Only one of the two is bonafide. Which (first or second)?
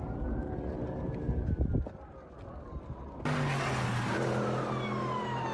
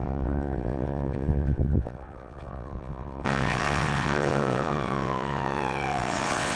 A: first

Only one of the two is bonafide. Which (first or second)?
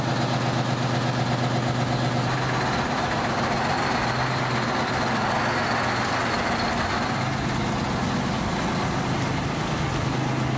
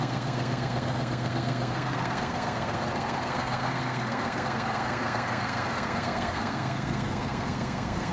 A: first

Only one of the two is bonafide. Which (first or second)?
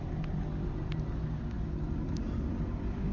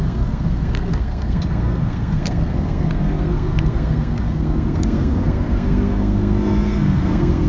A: first